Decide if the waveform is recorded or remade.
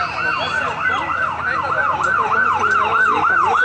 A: recorded